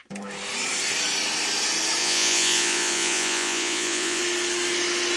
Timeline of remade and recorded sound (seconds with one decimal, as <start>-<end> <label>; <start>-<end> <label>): 0.0-2.0 recorded; 2.0-4.2 remade; 4.2-5.2 recorded